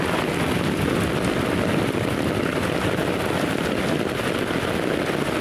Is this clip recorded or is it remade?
recorded